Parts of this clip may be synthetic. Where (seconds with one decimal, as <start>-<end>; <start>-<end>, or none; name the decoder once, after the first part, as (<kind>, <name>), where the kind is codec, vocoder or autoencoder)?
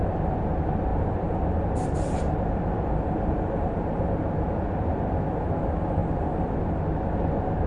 0.9-4.0 (vocoder, BigVGAN v2); 6.0-7.0